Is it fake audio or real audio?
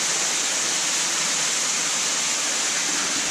real